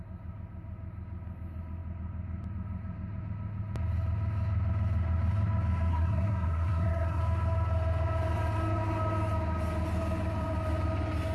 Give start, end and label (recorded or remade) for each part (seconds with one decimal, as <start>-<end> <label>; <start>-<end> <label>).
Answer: 0.0-5.9 recorded; 5.9-7.2 remade; 7.2-11.3 recorded